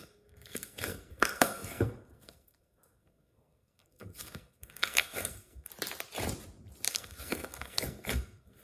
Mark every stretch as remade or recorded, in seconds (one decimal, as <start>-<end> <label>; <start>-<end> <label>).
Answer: 0.0-5.7 remade; 5.7-6.9 recorded; 6.9-8.6 remade